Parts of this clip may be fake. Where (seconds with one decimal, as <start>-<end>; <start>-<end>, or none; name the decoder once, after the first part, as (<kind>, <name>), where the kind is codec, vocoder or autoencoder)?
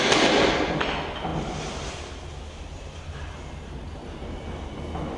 none